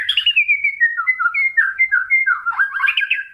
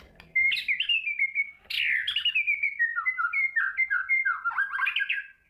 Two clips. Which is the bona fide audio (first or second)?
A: second